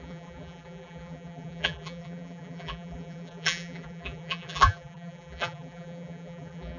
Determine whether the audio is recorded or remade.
remade